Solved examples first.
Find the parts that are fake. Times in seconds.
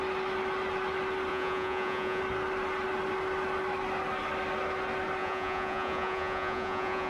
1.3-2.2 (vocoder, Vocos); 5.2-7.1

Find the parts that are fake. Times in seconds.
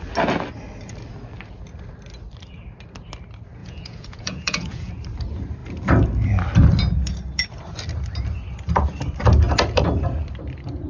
3.6-4.9 (vocoder, Vocos)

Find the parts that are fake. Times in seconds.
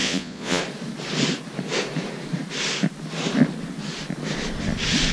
0.0-0.6 (vocoder, Vocos)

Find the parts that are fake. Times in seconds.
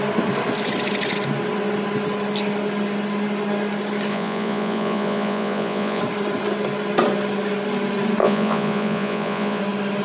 4.1-6.0 (vocoder, Vocos); 8.2-9.6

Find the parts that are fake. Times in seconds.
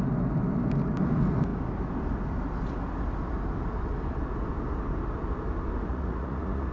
5.9-6.7 (vocoder, Vocos)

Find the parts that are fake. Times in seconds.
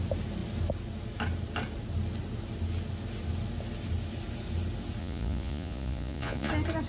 5.0-6.5 (vocoder, Vocos)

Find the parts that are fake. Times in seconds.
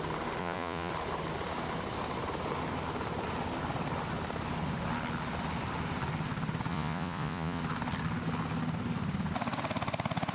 0.4-0.9 (vocoder, Vocos); 6.7-7.6